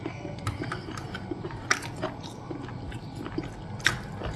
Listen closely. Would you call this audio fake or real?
real